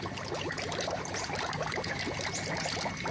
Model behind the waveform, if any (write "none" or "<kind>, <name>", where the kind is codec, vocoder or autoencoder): none